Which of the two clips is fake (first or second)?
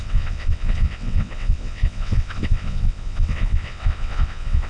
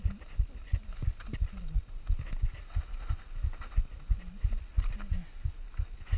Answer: first